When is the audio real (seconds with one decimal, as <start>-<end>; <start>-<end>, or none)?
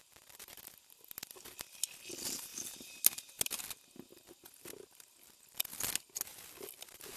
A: 0.0-7.2